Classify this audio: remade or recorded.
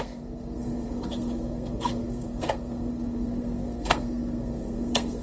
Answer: remade